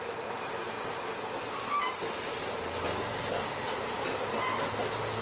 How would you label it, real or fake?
real